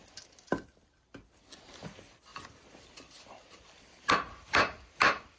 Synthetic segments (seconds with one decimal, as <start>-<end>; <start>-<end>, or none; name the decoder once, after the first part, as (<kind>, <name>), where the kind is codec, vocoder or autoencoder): 2.3-4.1 (vocoder, BigVGAN v2)